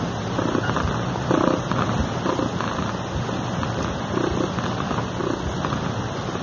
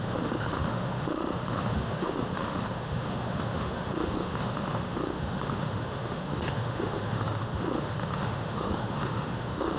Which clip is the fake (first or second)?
second